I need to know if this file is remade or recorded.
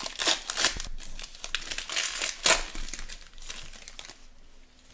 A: recorded